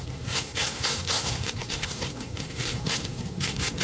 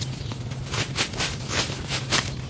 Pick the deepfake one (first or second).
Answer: first